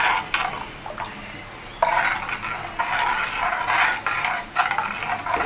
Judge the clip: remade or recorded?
recorded